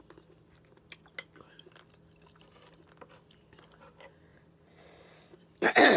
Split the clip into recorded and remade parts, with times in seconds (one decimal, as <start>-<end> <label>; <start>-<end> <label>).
0.0-4.3 recorded; 4.3-6.0 remade